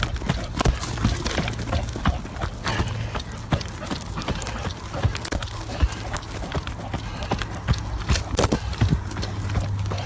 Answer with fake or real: real